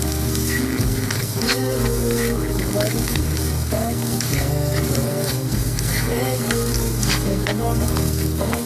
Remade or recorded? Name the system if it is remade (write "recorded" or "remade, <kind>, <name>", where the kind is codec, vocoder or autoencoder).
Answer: remade, codec, SNAC